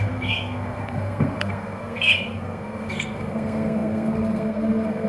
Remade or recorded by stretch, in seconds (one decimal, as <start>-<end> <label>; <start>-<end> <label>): 0.0-5.1 remade